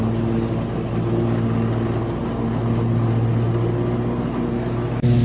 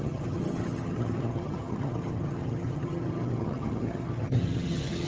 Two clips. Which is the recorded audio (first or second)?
first